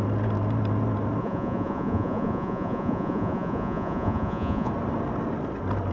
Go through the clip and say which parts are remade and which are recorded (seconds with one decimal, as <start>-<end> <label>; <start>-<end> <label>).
0.0-1.2 recorded; 1.2-4.7 remade; 4.7-5.9 recorded